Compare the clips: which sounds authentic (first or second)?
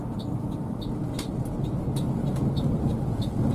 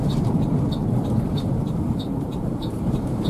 first